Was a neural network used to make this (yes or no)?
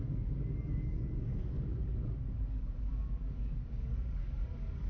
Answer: yes